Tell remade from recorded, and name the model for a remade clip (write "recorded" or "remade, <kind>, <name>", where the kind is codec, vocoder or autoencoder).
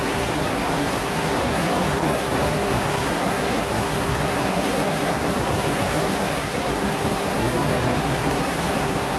remade, codec, SNAC